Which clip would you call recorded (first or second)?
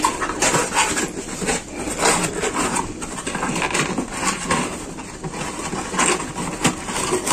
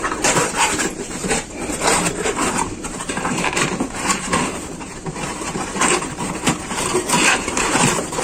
first